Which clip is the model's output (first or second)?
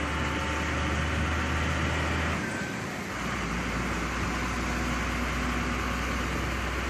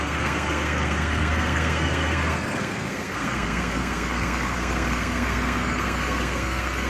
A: second